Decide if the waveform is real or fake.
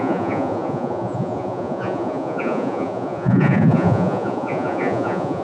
fake